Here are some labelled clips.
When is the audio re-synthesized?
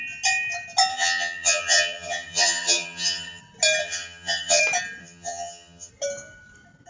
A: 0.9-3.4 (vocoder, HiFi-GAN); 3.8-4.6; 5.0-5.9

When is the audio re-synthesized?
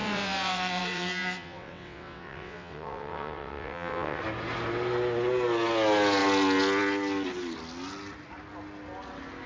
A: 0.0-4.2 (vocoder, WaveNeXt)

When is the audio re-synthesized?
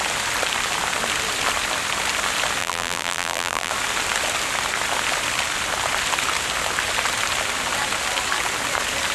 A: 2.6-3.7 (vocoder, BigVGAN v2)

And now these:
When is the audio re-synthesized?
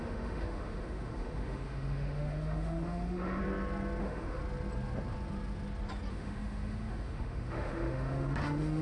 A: 0.0-3.4 (autoencoder, DAC-VAE); 4.0-4.4; 6.1-8.8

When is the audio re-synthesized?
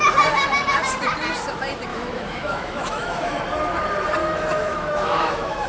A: 1.9-3.4 (autoencoder, DAC-VAE); 4.2-5.7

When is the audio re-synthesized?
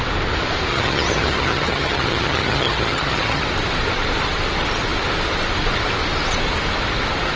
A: 0.7-3.4 (vocoder, HiFi-GAN)